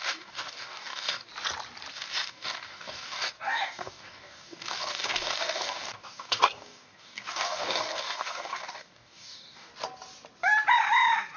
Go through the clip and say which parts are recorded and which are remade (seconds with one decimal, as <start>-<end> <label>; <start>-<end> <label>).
0.0-1.3 remade; 1.3-1.9 recorded; 1.9-9.7 remade; 9.7-11.4 recorded